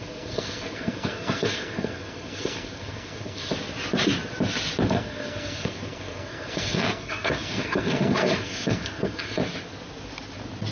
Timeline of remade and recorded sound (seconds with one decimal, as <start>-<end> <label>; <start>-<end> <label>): 0.0-3.5 remade; 3.5-4.9 recorded; 4.9-9.4 remade; 9.4-10.7 recorded